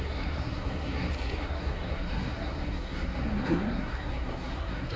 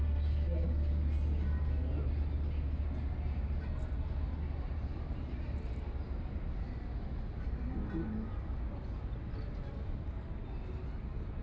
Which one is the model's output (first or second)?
first